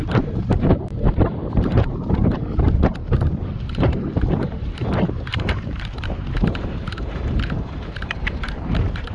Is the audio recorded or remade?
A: remade